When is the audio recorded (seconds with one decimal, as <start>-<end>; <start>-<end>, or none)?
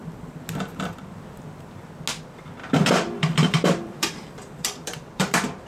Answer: 0.0-2.6